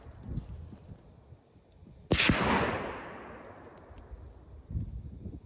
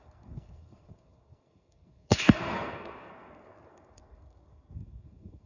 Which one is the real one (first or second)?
first